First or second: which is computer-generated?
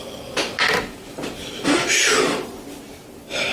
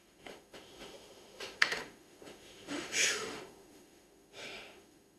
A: second